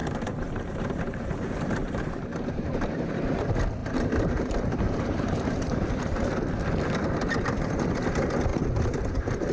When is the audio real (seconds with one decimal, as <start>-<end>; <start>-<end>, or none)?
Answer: 3.4-3.8; 6.2-9.5

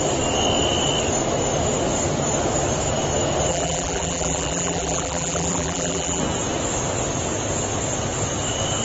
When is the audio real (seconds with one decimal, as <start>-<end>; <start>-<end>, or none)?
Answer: 0.0-3.5; 6.2-8.8

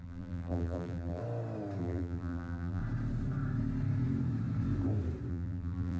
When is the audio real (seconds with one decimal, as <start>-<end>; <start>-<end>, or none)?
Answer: 1.2-1.8; 2.8-5.3

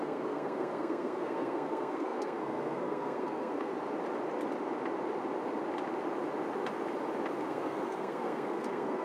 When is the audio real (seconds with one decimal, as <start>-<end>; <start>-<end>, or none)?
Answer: 3.7-7.5